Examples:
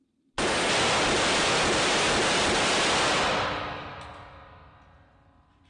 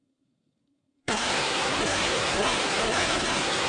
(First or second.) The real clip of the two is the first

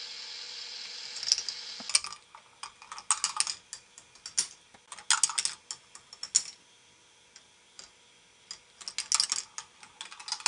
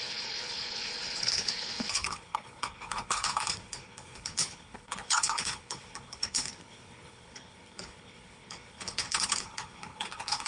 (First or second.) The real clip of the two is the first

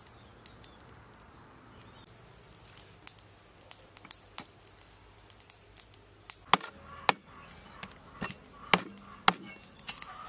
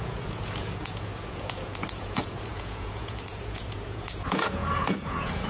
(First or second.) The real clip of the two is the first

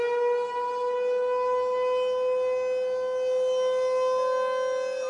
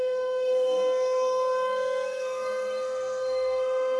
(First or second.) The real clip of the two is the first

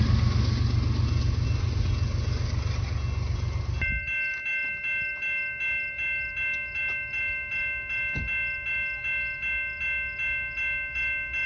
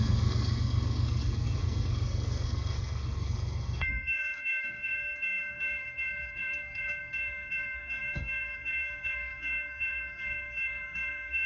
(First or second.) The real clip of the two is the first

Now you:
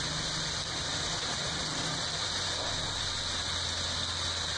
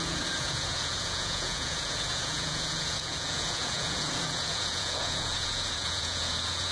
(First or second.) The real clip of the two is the first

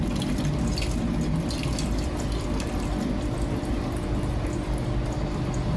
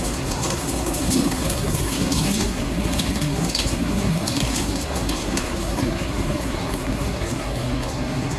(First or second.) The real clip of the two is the first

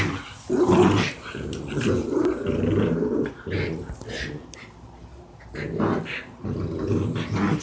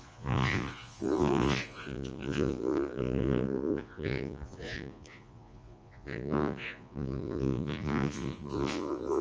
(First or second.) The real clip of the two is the first